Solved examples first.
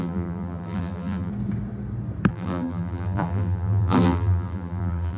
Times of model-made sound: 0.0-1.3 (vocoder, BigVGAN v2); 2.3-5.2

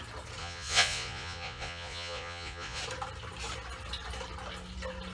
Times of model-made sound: 0.4-2.8 (vocoder, Vocos)

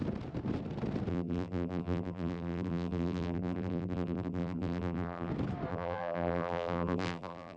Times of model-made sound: 1.1-5.3 (vocoder, BigVGAN v2); 5.7-7.6

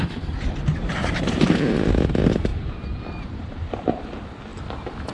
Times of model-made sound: 1.0-1.9 (vocoder, BigVGAN v2); 2.5-4.0